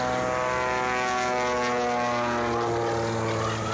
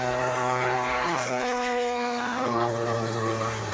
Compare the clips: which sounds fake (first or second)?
second